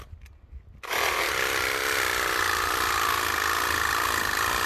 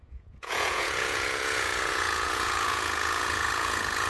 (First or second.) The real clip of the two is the first